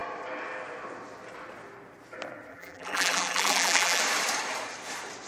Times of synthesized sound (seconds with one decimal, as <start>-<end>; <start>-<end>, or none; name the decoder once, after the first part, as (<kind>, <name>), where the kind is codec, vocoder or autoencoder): 2.5-4.0 (vocoder, BigVGAN v2)